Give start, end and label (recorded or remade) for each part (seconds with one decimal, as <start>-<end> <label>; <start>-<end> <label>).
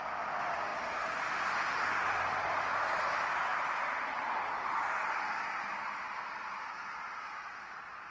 0.0-8.1 recorded